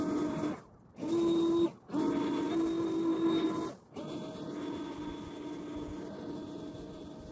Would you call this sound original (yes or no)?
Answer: yes